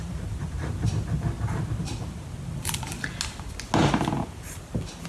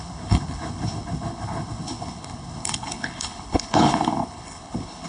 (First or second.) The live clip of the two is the first